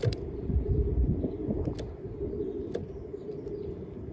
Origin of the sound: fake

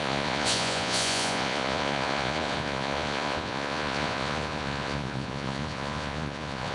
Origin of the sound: fake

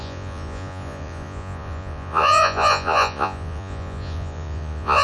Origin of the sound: fake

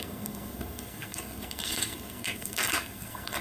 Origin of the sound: fake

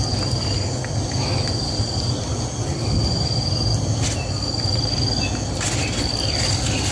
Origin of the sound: real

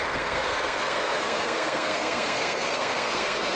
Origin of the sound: fake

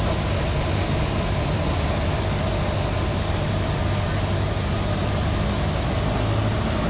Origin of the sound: real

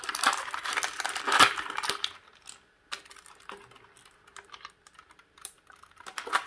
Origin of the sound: real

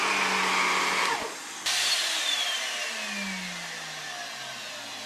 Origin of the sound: real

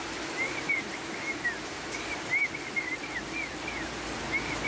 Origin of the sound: real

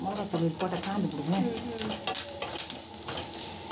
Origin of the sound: real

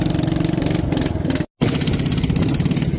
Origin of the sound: real